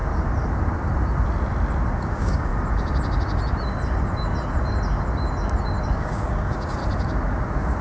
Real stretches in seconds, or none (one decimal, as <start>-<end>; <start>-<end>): 0.0-2.0; 2.5-5.9; 6.8-7.8